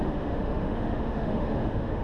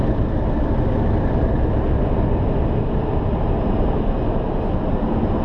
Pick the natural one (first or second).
second